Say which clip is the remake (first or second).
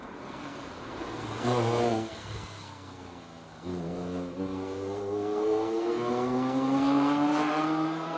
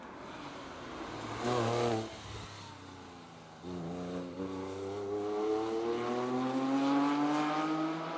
first